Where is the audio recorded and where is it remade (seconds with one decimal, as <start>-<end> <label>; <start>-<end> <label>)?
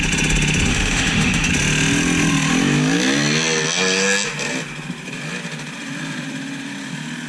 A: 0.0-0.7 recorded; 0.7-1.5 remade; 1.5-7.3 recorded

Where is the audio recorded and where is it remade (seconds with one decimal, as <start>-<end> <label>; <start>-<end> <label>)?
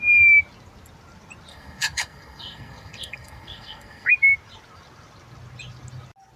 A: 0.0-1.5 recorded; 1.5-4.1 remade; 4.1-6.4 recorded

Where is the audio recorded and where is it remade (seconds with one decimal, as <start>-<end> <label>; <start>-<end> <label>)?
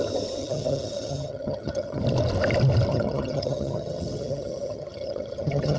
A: 0.0-0.4 recorded; 0.4-2.0 remade; 2.0-2.9 recorded; 2.9-5.8 remade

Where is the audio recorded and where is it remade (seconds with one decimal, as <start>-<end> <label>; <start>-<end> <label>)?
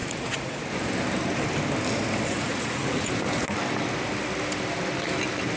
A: 0.0-0.6 remade; 0.6-2.3 recorded; 2.3-3.1 remade; 3.1-5.6 recorded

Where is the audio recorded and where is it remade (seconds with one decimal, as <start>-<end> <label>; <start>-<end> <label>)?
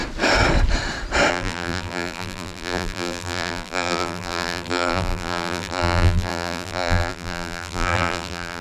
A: 0.0-1.3 recorded; 1.3-8.6 remade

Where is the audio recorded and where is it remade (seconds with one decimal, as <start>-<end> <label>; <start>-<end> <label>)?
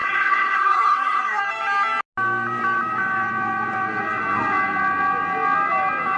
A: 0.0-1.4 remade; 1.4-6.2 recorded